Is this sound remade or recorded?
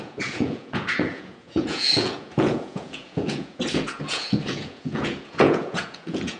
remade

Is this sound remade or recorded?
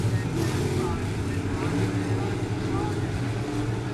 recorded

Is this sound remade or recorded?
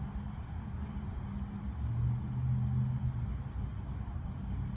recorded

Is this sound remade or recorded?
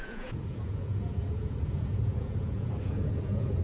remade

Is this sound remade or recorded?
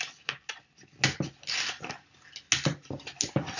recorded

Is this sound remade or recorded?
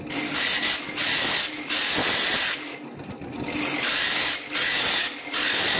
recorded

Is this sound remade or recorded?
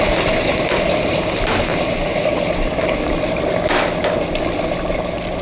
recorded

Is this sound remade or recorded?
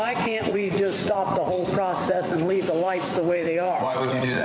remade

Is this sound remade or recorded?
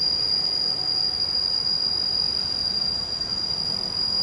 recorded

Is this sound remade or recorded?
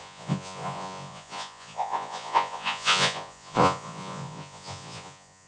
remade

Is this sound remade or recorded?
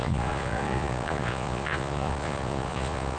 remade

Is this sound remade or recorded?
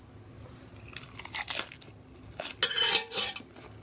recorded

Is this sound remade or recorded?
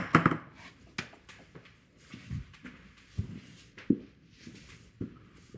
recorded